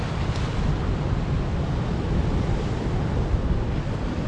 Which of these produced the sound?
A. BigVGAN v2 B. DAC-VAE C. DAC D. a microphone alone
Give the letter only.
D